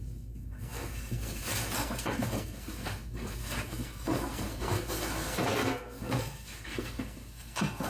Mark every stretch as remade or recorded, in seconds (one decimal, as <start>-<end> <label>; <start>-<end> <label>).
0.0-7.9 remade